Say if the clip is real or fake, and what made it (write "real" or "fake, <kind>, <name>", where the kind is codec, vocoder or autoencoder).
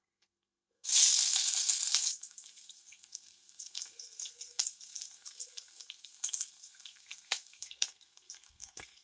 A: fake, codec, SNAC